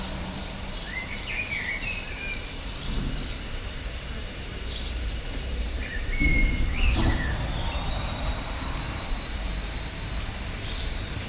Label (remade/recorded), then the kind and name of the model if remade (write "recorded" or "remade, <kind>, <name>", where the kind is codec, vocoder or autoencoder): remade, vocoder, BigVGAN v2